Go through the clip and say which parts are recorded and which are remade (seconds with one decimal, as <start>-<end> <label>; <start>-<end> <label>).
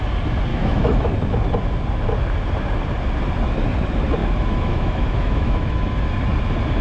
0.0-0.5 recorded; 0.5-1.1 remade; 1.1-4.2 recorded; 4.2-6.1 remade; 6.1-6.8 recorded